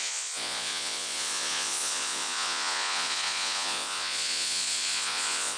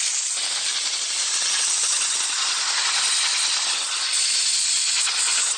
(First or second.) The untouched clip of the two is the second